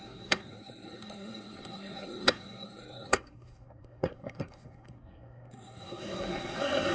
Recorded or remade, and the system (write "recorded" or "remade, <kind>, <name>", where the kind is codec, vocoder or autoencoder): remade, codec, SNAC